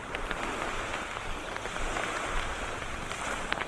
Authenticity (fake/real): real